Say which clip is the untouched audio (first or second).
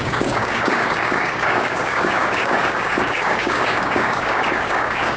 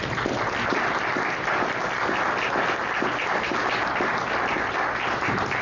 second